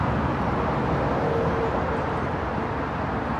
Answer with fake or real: real